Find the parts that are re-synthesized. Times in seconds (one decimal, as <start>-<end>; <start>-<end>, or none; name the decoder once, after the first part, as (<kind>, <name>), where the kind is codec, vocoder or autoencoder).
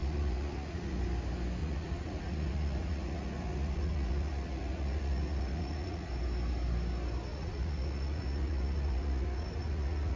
0.0-1.0 (vocoder, Vocos); 1.6-6.1; 7.3-10.2